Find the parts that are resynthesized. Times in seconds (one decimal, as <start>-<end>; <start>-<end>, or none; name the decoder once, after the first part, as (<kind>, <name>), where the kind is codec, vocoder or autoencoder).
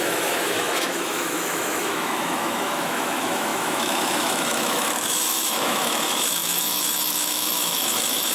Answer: 0.0-8.3 (autoencoder, DAC-VAE)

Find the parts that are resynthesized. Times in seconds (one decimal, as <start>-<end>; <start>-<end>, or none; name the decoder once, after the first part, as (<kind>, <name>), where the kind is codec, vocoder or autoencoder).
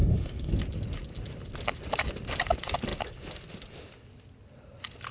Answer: 0.0-0.5 (autoencoder, DAC-VAE)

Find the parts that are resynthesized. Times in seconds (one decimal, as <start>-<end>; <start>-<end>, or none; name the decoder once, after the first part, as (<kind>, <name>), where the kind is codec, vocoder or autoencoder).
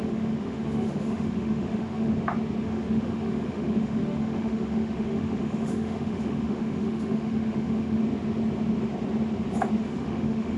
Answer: 0.0-2.1 (autoencoder, DAC-VAE); 2.6-8.0; 9.8-10.6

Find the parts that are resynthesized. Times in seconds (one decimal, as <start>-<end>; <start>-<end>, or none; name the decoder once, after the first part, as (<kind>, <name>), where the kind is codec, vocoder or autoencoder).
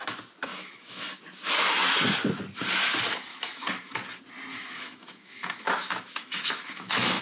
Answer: 0.5-1.2 (autoencoder, DAC-VAE); 3.3-3.9; 4.5-7.2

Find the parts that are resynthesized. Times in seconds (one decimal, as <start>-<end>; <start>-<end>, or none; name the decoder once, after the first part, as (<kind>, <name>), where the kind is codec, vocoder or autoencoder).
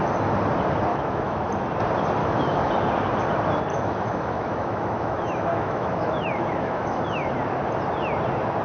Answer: 0.9-1.5 (autoencoder, DAC-VAE); 2.2-2.7; 3.7-7.3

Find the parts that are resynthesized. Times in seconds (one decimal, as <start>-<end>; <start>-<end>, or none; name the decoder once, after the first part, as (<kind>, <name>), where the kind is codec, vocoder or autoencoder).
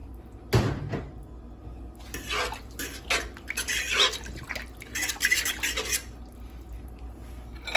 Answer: none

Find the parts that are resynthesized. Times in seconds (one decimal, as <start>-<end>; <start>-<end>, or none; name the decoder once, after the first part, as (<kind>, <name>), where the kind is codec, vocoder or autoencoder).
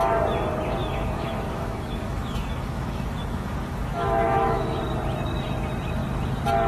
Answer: 0.8-4.8 (autoencoder, DAC-VAE)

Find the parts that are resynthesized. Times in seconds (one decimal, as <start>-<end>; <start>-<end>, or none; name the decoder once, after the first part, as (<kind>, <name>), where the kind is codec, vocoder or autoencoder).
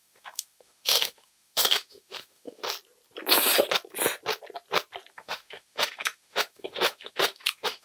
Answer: 0.0-2.6 (autoencoder, DAC-VAE); 5.1-7.8